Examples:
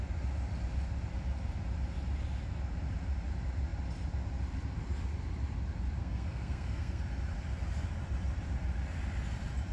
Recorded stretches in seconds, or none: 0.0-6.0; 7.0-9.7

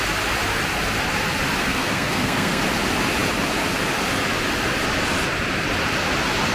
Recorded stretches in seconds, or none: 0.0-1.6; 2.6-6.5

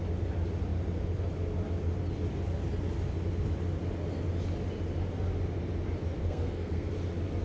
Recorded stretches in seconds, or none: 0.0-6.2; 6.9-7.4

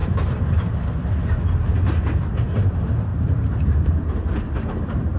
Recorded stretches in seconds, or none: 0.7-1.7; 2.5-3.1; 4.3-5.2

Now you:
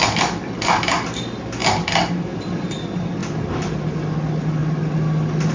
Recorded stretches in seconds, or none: 0.0-5.5

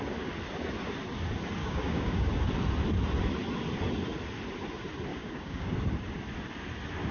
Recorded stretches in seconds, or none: 0.0-1.6; 2.3-5.1; 5.7-7.1